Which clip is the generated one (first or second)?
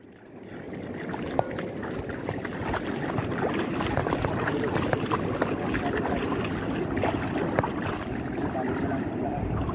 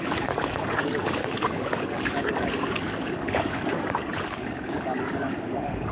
second